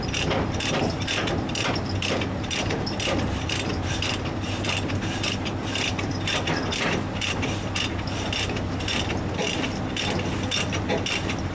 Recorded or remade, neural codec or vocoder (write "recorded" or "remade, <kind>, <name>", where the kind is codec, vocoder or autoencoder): remade, vocoder, BigVGAN v2